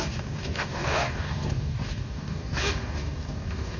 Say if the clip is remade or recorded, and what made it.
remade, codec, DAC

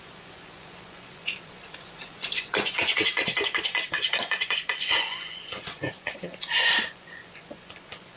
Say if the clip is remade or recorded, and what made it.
remade, vocoder, Vocos